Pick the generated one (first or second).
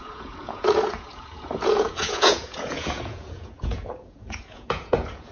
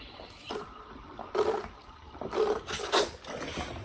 first